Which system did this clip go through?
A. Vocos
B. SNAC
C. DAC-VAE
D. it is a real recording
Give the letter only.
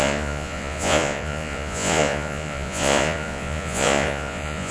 A